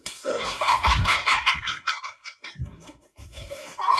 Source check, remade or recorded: remade